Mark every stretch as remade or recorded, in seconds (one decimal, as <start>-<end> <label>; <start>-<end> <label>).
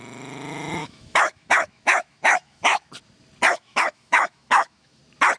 0.0-0.8 recorded; 0.8-2.9 remade; 2.9-3.5 recorded; 3.5-5.0 remade; 5.0-5.4 recorded